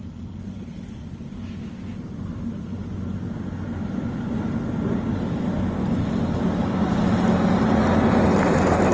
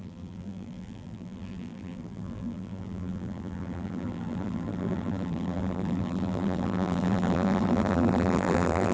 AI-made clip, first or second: second